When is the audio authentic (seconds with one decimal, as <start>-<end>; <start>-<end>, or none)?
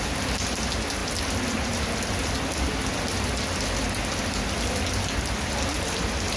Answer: 0.0-6.4